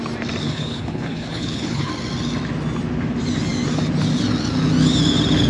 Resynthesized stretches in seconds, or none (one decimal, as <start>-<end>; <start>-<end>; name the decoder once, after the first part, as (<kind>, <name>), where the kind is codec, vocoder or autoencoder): 0.4-1.9 (codec, HILCodec)